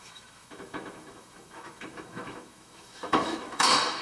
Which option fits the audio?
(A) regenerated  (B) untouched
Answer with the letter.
A